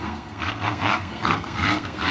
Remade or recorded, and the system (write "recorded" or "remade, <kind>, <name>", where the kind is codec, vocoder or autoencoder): remade, codec, SNAC